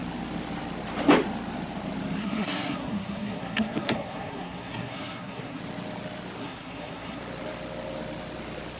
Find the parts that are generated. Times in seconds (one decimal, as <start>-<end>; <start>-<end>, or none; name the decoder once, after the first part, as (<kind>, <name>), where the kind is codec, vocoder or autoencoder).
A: 2.2-5.6 (codec, SNAC); 6.4-7.2